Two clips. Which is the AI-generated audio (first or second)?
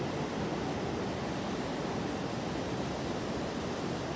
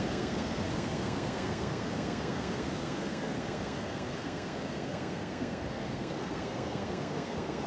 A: second